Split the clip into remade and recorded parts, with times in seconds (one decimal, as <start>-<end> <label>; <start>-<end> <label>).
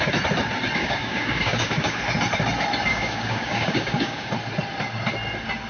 0.0-0.8 recorded; 0.8-2.0 remade; 2.0-2.9 recorded; 2.9-4.3 remade; 4.3-5.7 recorded